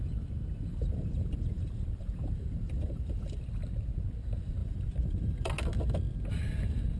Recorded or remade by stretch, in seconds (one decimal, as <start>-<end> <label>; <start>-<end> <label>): 0.0-0.7 recorded; 0.7-3.4 remade; 3.4-4.6 recorded; 4.6-5.5 remade; 5.5-7.0 recorded